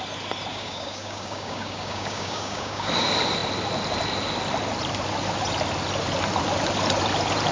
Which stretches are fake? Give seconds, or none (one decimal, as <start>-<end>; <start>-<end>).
0.5-2.9